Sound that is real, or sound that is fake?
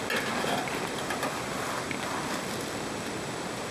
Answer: real